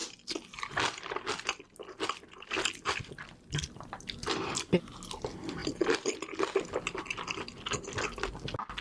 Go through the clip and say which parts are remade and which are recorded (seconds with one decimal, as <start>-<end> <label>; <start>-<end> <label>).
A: 0.0-8.8 recorded